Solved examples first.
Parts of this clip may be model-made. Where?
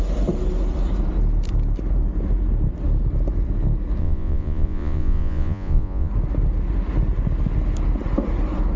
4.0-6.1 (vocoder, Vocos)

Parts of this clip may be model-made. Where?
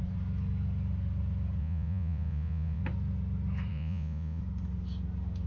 1.6-2.8 (vocoder, Vocos); 3.7-4.4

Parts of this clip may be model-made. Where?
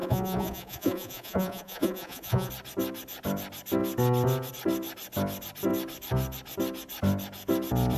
0.0-2.5 (vocoder, Vocos)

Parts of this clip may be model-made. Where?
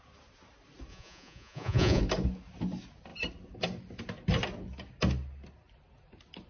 0.9-2.0 (vocoder, Vocos)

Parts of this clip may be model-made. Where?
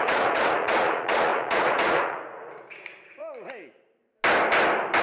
0.0-3.2 (vocoder, Vocos)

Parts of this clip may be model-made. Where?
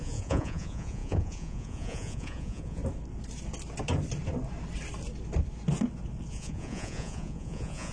0.0-2.8 (vocoder, Vocos); 6.3-7.9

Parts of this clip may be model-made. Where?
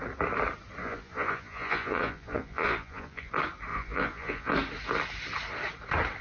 0.8-3.3 (vocoder, Vocos); 3.7-4.5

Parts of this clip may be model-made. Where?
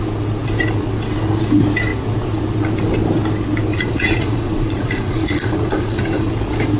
3.7-6.3 (vocoder, Vocos)